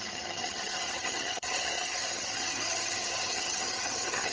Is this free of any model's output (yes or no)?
no